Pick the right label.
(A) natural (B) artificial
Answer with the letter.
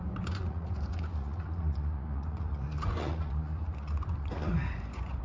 B